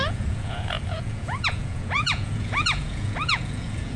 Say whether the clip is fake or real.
fake